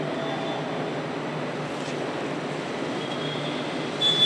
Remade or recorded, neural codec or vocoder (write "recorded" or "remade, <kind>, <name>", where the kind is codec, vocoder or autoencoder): recorded